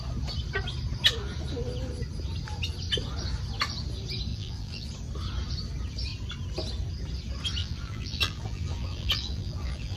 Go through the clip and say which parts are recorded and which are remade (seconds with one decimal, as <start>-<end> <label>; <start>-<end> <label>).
0.0-4.3 recorded; 4.3-4.9 remade; 4.9-7.6 recorded; 7.6-10.0 remade